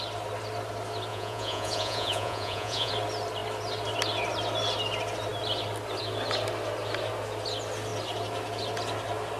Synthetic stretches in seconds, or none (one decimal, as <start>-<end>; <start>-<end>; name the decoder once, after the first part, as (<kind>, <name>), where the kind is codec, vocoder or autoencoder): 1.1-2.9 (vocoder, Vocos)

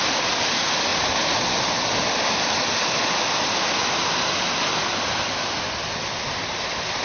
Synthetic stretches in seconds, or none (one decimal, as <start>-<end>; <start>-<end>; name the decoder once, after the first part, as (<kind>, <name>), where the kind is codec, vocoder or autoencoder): 0.0-3.8 (vocoder, BigVGAN v2); 5.8-7.0

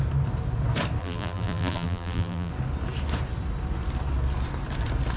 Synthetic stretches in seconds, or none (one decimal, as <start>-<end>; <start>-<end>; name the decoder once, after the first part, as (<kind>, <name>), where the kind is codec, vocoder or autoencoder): 1.0-2.5 (vocoder, BigVGAN v2)